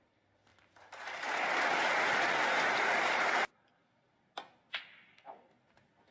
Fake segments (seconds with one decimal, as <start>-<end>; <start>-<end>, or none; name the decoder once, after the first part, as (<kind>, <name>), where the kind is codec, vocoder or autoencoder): 0.5-4.2 (vocoder, BigVGAN v2)